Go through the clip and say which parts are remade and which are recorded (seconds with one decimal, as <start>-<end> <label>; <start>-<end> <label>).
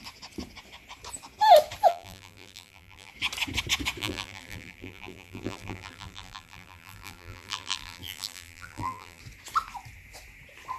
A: 0.0-1.9 recorded; 1.9-3.1 remade; 3.1-4.0 recorded; 4.0-9.2 remade; 9.2-10.8 recorded